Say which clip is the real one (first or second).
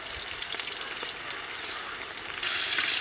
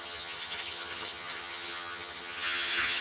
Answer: first